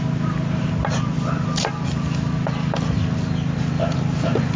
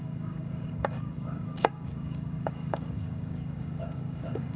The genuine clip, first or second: first